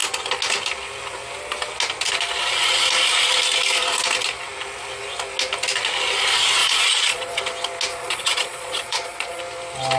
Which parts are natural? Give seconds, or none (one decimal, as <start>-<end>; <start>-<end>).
0.0-6.6; 7.4-7.9; 9.4-10.0